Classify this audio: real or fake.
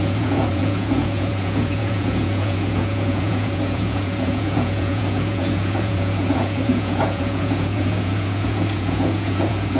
fake